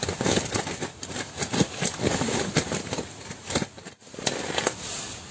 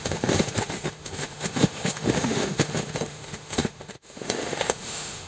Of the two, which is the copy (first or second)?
second